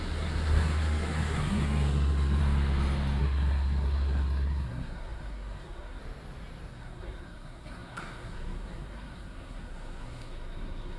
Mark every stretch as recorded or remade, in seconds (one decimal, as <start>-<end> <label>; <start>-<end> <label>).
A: 0.0-2.4 remade; 2.4-3.2 recorded; 3.2-6.0 remade; 6.0-6.7 recorded; 6.7-11.0 remade